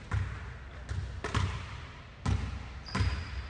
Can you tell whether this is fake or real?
real